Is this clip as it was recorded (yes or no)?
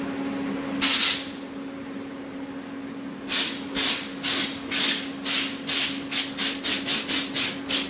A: yes